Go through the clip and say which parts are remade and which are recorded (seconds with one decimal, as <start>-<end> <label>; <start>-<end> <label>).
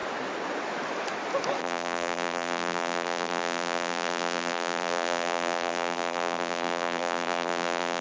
0.0-1.6 recorded; 1.6-8.0 remade